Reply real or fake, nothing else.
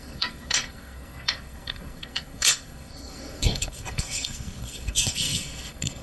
fake